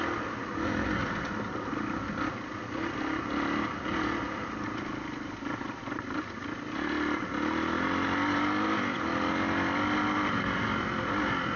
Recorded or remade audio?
recorded